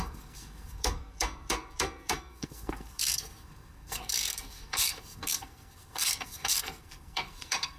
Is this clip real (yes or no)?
no